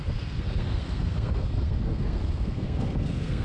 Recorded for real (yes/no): no